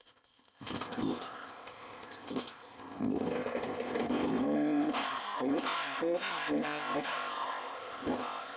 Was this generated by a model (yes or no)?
yes